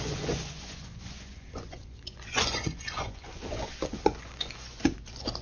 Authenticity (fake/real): fake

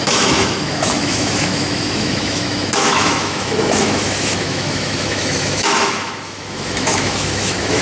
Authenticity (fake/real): fake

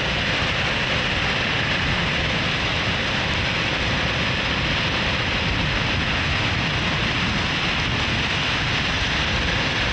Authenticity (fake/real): real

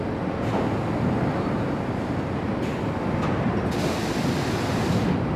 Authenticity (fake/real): real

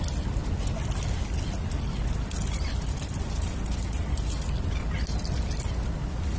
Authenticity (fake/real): real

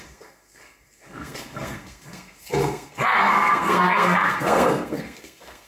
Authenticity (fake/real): fake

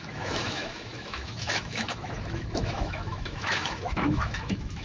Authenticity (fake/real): fake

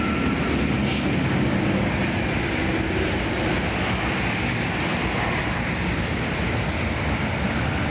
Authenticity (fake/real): real